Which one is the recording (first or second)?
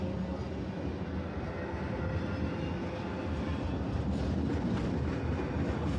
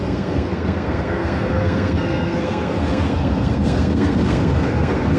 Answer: first